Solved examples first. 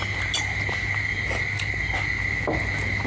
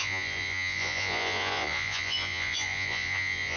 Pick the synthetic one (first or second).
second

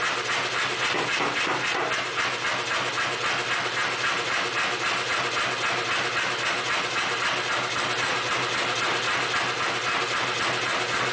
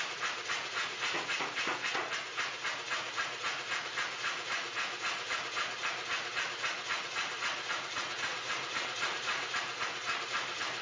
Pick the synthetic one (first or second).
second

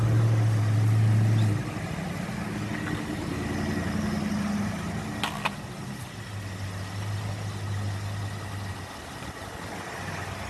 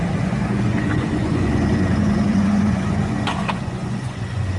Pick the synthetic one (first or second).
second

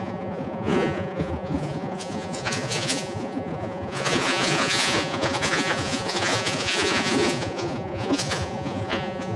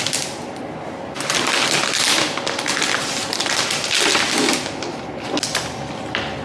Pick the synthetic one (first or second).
first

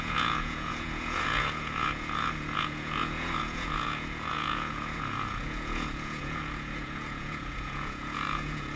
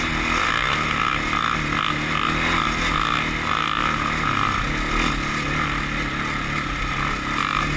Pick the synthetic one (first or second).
first